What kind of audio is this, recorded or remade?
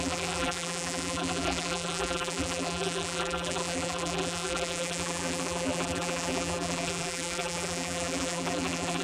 remade